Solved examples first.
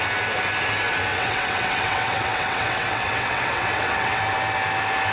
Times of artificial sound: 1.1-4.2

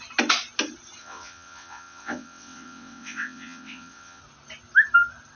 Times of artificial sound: 1.0-4.2